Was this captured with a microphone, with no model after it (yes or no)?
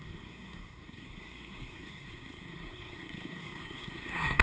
no